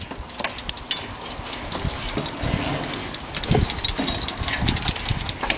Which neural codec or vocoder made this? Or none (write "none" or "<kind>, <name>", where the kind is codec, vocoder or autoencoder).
none